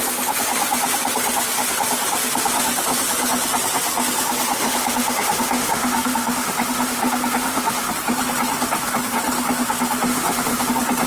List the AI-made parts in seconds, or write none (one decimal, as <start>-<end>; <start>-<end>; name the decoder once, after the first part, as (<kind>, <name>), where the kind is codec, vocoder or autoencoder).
4.6-7.9 (autoencoder, DAC-VAE); 10.1-10.7